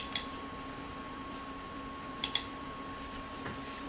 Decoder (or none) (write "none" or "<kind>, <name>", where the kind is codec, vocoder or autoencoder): vocoder, BigVGAN v2